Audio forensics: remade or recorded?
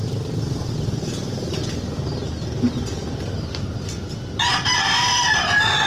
recorded